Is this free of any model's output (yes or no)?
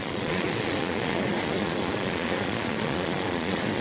no